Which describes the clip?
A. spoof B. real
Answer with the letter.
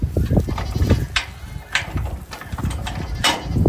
B